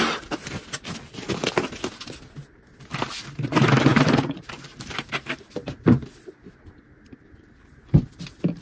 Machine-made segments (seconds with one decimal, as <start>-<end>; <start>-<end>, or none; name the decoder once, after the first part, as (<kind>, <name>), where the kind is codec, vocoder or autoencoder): 3.9-6.8 (vocoder, BigVGAN v2)